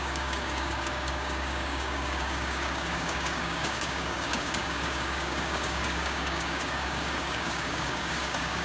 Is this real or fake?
fake